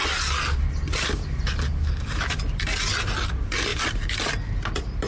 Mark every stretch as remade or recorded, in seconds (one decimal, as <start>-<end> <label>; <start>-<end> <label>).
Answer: 0.0-5.1 recorded